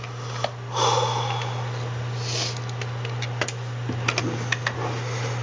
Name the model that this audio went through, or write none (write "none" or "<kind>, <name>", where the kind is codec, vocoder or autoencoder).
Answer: none